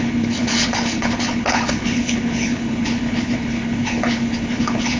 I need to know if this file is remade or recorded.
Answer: remade